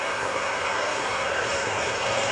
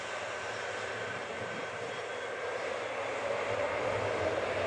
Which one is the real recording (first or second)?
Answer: second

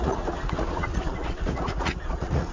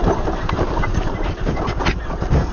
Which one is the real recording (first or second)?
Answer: second